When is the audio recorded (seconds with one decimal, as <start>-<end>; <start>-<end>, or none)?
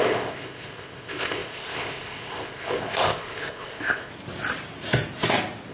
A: 4.1-5.7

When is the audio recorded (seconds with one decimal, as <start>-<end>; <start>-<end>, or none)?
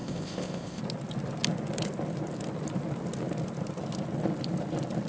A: 0.8-5.1